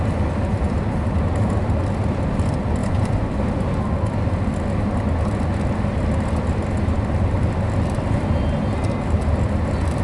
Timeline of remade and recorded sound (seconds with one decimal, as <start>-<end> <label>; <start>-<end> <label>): 0.0-2.8 recorded; 2.8-3.3 remade; 3.3-10.0 recorded

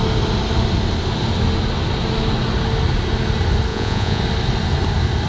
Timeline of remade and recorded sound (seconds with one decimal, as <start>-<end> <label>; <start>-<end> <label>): 0.0-3.7 recorded; 3.7-4.2 remade; 4.2-5.3 recorded

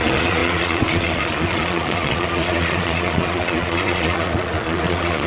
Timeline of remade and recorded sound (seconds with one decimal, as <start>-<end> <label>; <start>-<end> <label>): 0.0-5.3 remade

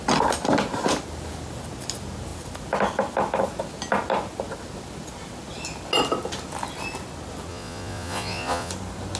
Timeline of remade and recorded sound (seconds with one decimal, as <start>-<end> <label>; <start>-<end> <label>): 0.0-7.5 recorded; 7.5-8.7 remade; 8.7-9.2 recorded

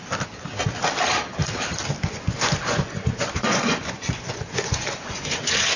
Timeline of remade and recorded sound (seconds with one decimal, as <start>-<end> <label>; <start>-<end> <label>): 0.0-2.1 recorded; 2.1-5.8 remade

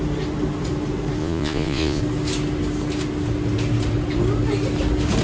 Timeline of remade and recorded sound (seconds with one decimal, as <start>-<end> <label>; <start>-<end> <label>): 0.0-1.2 recorded; 1.2-2.0 remade; 2.0-5.2 recorded

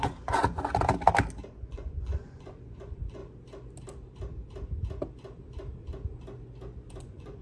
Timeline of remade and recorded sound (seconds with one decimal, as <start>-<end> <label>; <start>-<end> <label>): 0.0-0.9 remade; 0.9-1.6 recorded; 1.6-3.2 remade; 3.2-7.0 recorded; 7.0-7.4 remade

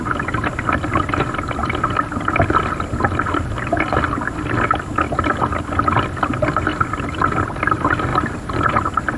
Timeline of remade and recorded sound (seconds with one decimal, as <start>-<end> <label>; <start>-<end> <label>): 0.0-9.2 recorded